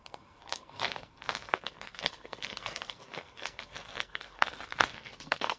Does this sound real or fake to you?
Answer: fake